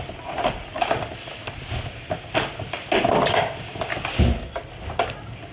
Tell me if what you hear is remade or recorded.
recorded